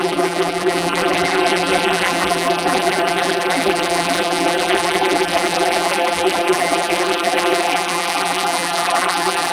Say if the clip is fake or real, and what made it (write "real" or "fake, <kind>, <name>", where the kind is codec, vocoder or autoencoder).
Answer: fake, vocoder, BigVGAN v2